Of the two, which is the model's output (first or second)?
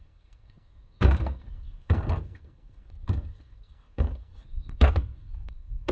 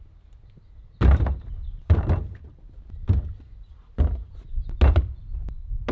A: first